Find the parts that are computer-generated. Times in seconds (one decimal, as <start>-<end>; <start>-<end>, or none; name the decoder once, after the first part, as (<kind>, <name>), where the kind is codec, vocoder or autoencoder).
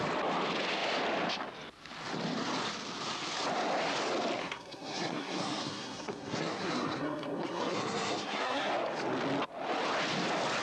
4.4-8.7 (codec, SNAC)